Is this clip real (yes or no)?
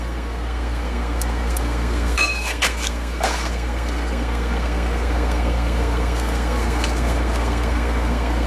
no